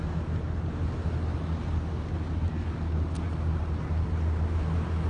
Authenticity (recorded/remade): recorded